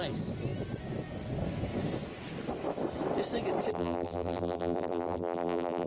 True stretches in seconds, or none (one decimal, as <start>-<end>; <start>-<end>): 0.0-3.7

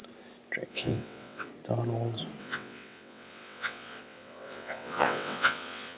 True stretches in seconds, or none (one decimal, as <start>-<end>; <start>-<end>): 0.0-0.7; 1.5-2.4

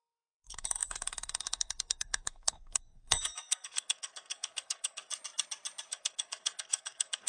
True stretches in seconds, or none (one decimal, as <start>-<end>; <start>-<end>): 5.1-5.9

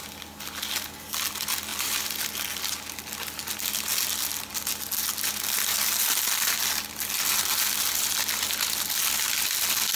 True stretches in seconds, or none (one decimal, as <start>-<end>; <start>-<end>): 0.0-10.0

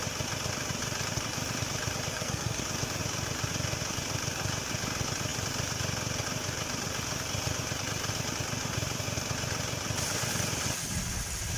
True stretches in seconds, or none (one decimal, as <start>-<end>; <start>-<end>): 0.0-2.1; 2.6-11.6